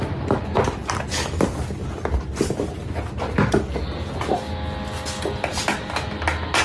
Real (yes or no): yes